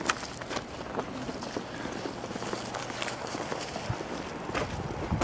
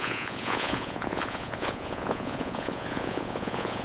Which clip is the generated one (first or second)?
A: second